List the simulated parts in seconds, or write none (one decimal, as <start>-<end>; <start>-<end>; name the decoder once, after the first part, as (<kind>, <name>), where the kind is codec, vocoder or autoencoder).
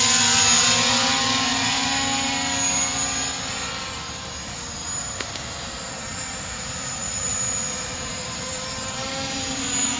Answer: 4.8-9.6 (vocoder, BigVGAN v2)